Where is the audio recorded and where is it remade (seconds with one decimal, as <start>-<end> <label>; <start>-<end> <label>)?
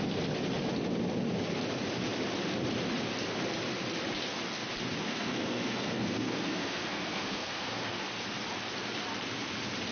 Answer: 0.0-5.0 recorded; 5.0-8.0 remade; 8.0-9.9 recorded